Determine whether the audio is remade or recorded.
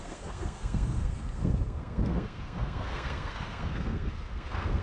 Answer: remade